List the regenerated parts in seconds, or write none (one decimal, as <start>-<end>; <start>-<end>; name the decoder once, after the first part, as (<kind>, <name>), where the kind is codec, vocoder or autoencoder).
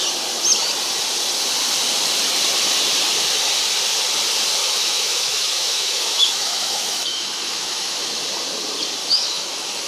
4.6-8.2 (autoencoder, DAC-VAE); 9.0-9.9